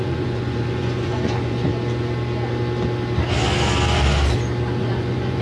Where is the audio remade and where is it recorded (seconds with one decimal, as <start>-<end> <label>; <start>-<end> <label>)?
0.0-1.7 remade; 1.7-4.8 recorded; 4.8-5.4 remade